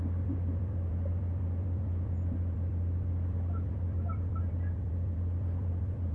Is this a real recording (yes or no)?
no